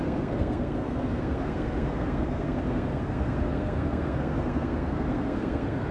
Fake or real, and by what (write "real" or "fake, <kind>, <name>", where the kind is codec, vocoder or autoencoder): fake, codec, SNAC